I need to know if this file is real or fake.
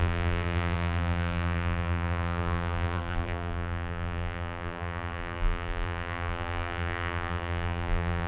fake